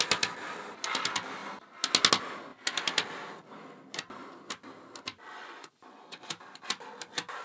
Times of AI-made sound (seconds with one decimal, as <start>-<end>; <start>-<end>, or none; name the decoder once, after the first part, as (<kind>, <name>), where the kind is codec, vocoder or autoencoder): 5.3-6.3 (vocoder, Vocos)